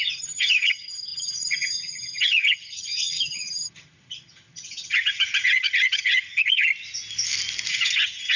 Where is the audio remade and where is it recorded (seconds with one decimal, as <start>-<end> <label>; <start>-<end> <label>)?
0.0-6.7 remade; 6.7-7.7 recorded; 7.7-8.4 remade